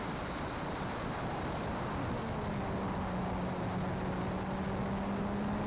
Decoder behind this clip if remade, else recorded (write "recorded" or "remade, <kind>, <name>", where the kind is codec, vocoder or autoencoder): recorded